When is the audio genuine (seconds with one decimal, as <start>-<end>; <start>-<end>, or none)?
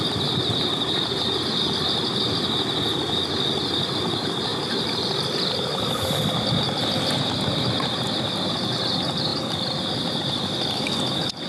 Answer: 0.0-4.5; 6.8-11.5